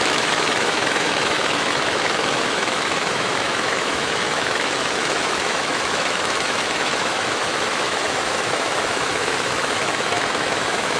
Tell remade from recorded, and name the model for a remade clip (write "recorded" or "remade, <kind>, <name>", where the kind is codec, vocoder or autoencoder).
remade, autoencoder, DAC-VAE